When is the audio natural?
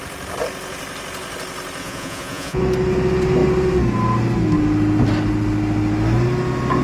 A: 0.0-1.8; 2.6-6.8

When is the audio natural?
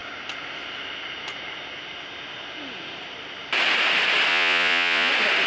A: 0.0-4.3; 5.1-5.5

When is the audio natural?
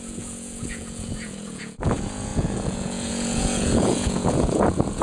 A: none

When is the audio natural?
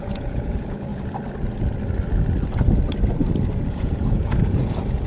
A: 0.9-3.7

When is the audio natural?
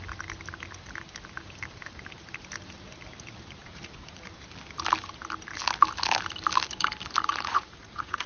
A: 0.0-3.6; 4.3-7.3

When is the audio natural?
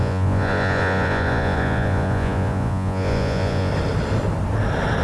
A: 3.7-5.0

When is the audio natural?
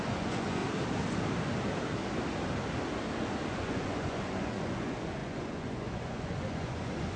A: 0.6-3.5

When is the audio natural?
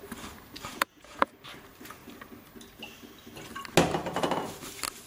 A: 0.0-0.7; 1.3-5.1